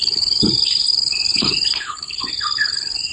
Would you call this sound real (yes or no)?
no